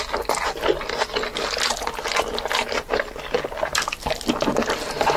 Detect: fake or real real